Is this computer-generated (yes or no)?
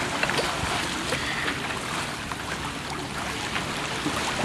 no